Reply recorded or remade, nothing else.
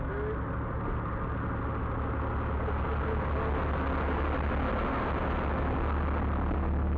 recorded